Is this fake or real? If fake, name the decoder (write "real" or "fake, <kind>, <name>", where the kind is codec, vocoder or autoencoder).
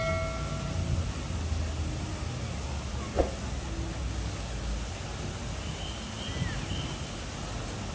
real